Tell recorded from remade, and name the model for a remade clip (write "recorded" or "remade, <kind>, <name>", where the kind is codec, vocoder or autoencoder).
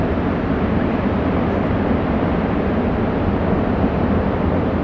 recorded